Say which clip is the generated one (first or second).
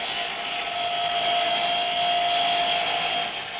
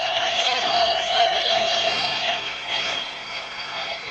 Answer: second